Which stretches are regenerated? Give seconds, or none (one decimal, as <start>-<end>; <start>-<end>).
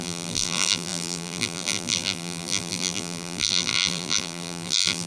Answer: 0.0-5.1